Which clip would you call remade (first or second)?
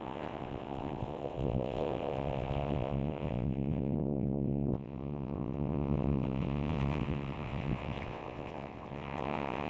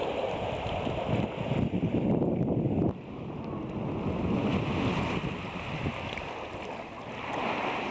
first